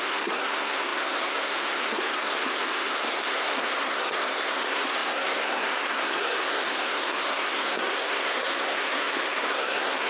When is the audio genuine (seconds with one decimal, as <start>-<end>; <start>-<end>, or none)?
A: none

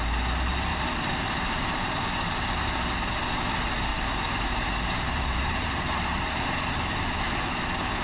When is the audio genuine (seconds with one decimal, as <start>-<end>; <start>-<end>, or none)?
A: 0.0-0.7; 2.0-3.9; 7.6-8.0

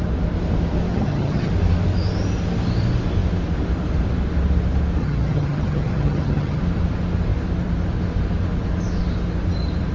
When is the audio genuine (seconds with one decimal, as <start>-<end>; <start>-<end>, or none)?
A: 0.0-0.9; 1.5-5.0; 6.6-9.9

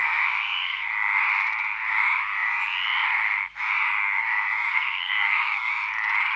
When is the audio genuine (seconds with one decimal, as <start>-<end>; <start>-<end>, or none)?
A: 0.9-4.7; 5.7-6.4

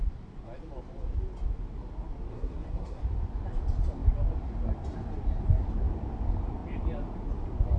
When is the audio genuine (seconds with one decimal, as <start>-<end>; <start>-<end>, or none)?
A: 0.0-2.3; 3.0-7.8

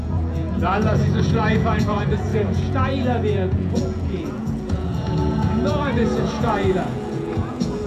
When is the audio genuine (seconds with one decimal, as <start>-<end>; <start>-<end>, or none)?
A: none

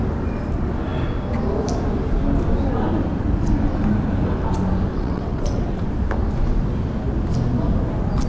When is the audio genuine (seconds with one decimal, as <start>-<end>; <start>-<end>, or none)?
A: 0.0-4.9; 5.9-8.3

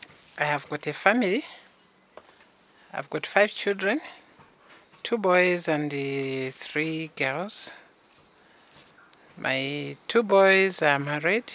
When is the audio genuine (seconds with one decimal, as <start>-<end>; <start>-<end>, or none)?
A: 0.0-2.9; 4.1-11.5